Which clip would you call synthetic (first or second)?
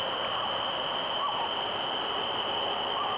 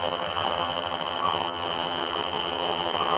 second